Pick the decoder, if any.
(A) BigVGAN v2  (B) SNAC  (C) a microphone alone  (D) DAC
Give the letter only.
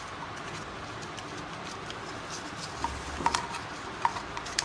C